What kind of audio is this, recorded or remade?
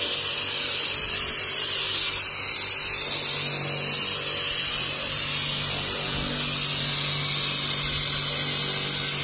recorded